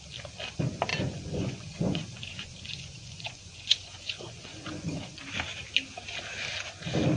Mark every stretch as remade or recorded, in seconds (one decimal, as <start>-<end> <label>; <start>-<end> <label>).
0.0-0.9 recorded; 0.9-5.2 remade; 5.2-7.2 recorded